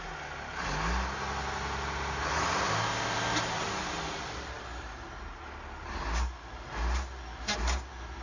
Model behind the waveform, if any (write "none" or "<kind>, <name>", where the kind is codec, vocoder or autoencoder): none